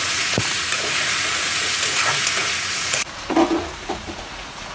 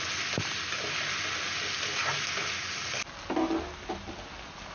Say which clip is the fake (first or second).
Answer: first